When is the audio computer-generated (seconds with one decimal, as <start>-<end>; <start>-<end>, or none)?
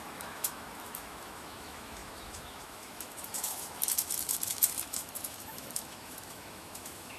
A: 0.0-7.2